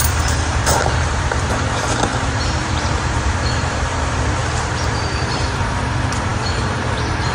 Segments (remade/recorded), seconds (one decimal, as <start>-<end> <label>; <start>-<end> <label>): 0.0-7.3 remade